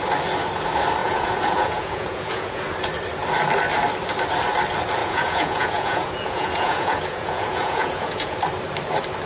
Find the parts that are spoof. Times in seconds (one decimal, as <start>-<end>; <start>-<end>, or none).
1.0-2.6; 5.0-8.4

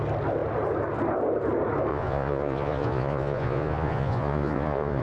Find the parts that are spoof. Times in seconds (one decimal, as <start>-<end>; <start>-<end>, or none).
1.9-5.0

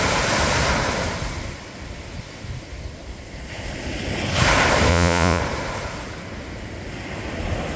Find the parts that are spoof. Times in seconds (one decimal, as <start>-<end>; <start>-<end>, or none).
4.9-5.4

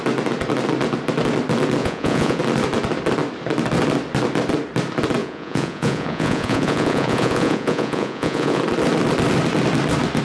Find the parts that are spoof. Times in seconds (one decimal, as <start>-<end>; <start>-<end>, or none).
1.8-2.4; 5.2-8.6